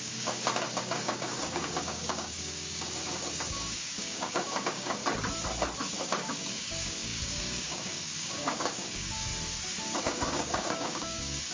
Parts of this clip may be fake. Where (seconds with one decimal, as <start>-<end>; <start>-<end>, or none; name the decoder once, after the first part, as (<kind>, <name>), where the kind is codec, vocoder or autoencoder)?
0.0-5.0 (codec, DAC); 6.0-9.3; 10.0-11.5